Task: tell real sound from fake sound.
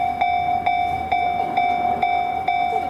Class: real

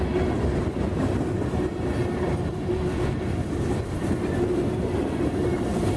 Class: real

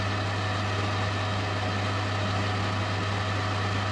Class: real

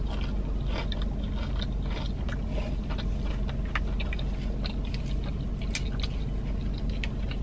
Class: real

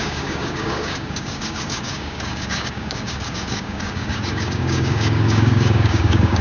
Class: fake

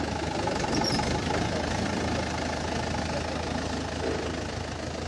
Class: real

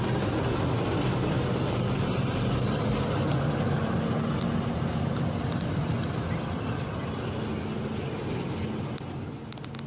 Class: real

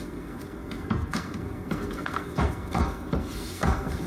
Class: fake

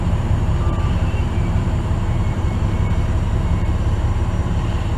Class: fake